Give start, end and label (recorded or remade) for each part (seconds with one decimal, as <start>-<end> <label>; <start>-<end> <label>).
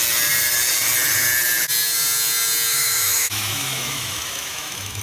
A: 0.0-2.7 recorded; 2.7-5.0 remade